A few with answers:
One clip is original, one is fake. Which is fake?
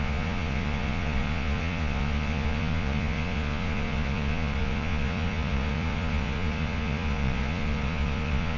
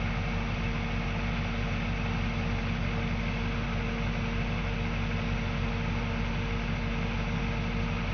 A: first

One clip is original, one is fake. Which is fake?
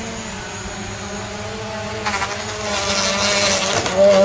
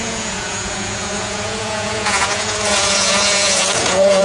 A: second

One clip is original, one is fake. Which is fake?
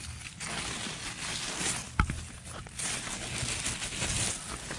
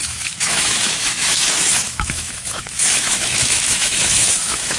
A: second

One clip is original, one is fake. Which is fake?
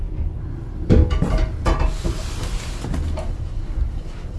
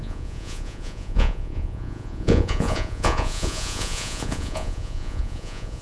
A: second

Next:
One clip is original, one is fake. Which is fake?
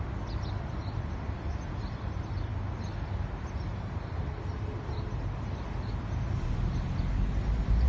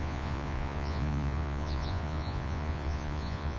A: second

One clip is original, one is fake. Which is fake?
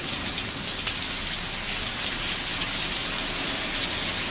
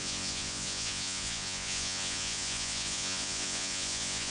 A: second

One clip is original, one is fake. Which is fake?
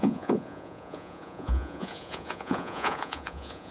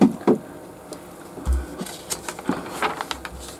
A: first